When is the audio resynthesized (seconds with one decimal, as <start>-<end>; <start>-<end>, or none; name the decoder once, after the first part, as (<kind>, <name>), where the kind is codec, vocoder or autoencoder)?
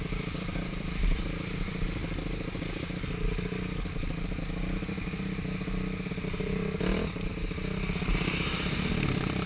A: 0.0-2.0 (vocoder, BigVGAN v2); 6.1-7.3; 8.9-9.5